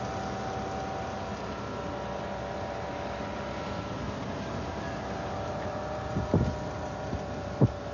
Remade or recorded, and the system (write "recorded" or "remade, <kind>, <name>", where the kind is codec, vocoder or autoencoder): recorded